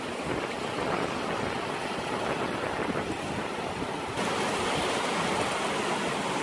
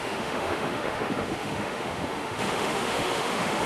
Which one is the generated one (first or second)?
second